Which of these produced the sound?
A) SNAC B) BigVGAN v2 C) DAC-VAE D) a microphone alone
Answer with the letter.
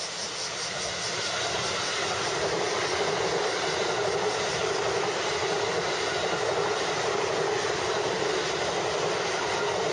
D